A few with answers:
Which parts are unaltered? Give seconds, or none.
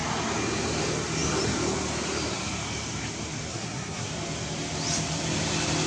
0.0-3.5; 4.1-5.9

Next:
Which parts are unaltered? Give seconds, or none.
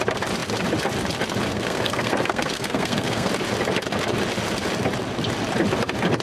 0.0-1.5; 3.3-6.2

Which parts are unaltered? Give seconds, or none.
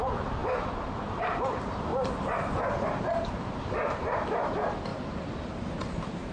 1.9-3.0